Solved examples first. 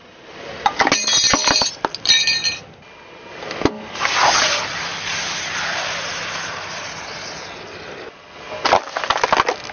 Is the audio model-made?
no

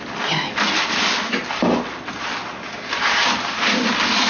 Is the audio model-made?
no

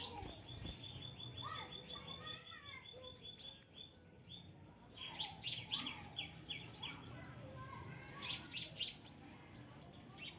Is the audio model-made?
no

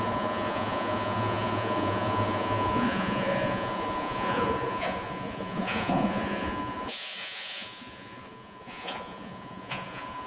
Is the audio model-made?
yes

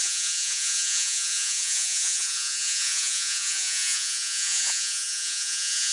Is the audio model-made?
yes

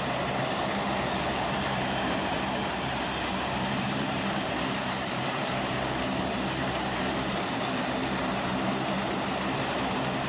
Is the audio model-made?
yes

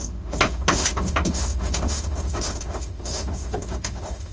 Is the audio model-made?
yes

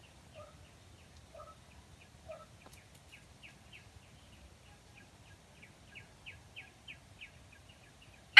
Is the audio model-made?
no